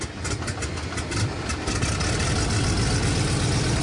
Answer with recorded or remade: recorded